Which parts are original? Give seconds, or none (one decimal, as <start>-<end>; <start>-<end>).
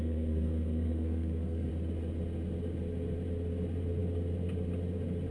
1.7-5.3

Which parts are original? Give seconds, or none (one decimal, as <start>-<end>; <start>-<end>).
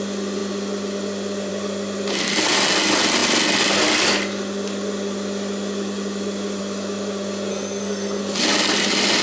0.0-7.5; 8.2-9.2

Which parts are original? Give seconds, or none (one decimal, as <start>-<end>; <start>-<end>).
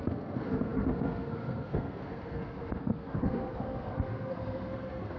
none